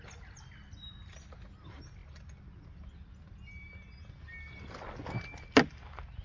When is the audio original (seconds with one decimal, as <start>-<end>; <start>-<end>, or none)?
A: 0.0-6.2